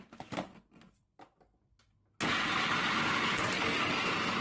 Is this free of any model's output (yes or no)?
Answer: yes